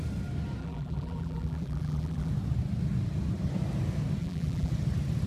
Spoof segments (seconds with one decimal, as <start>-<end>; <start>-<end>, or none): 0.6-2.3; 4.2-4.7

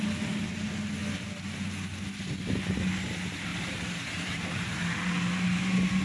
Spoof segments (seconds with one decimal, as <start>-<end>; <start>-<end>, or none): 3.5-4.9

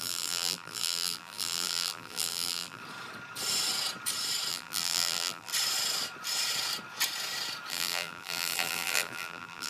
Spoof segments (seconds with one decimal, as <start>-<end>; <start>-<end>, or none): 0.0-2.8; 4.5-5.5; 7.7-9.7

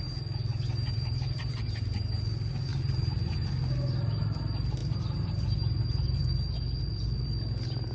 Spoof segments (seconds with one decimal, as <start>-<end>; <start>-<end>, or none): 0.5-2.2; 2.7-3.5; 4.8-6.2

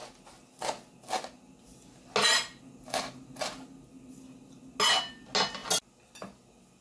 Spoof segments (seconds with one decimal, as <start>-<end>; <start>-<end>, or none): none